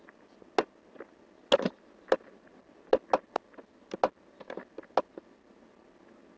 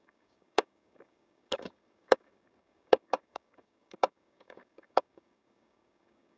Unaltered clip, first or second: first